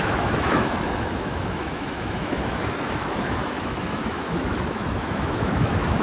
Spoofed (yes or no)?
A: yes